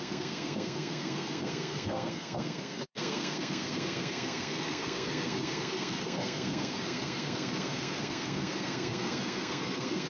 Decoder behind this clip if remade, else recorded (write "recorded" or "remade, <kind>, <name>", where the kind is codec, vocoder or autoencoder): remade, codec, SNAC